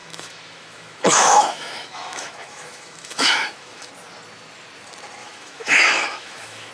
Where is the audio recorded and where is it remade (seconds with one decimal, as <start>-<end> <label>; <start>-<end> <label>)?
0.0-3.9 remade; 3.9-5.2 recorded; 5.2-6.7 remade